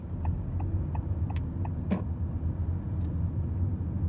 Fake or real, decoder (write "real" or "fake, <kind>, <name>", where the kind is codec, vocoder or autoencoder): real